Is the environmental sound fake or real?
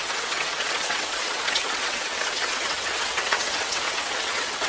fake